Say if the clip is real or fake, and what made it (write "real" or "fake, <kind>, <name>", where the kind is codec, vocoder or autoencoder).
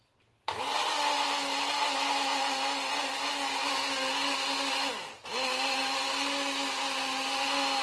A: real